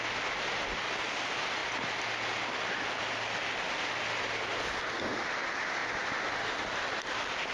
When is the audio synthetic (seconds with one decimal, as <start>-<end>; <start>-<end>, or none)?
none